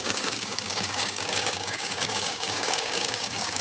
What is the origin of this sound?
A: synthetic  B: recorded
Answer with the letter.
A